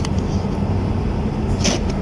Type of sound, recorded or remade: recorded